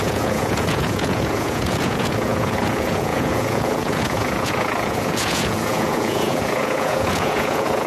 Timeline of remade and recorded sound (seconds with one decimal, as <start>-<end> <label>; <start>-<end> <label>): 0.0-7.9 remade